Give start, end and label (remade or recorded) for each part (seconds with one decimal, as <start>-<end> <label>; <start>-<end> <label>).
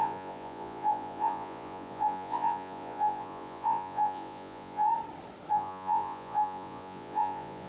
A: 0.0-4.9 remade; 4.9-5.5 recorded; 5.5-7.7 remade